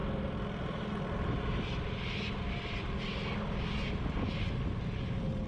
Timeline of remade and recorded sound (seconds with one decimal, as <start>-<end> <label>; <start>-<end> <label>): 0.0-5.5 recorded